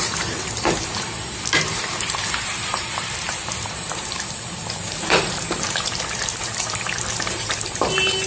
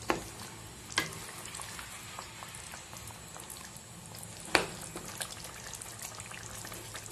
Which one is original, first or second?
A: second